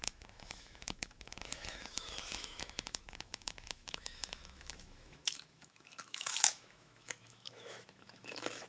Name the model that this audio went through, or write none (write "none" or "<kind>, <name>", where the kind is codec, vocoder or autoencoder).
autoencoder, DAC-VAE